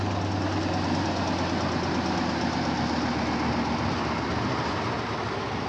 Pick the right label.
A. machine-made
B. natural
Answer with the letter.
B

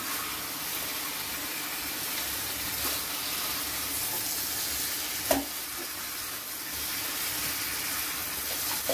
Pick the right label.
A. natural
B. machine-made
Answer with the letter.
A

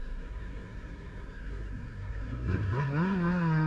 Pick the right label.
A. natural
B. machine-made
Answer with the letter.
B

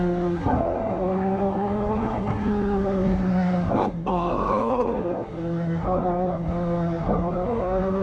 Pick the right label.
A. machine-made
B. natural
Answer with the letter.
A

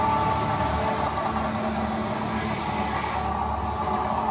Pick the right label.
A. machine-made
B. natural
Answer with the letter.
B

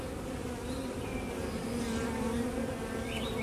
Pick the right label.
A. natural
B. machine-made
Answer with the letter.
A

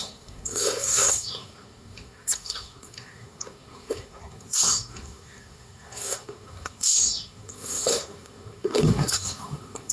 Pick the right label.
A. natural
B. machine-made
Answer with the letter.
B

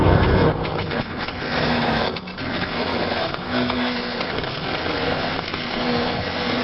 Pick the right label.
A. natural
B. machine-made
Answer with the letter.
B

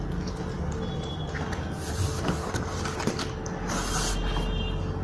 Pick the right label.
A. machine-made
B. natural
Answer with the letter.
B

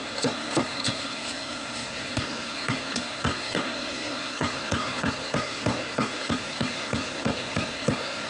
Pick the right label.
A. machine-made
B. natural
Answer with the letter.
A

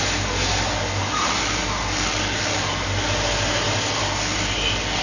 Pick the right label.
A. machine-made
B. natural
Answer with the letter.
B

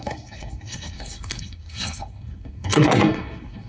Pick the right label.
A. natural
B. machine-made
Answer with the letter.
B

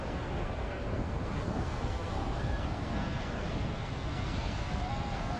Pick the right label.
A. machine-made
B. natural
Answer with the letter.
A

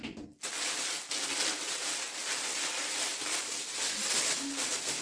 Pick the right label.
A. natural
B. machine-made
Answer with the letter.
A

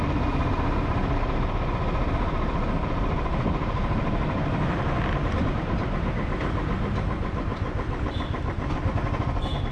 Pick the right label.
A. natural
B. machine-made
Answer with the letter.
A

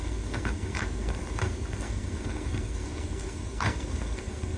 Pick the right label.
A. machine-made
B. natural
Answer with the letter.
A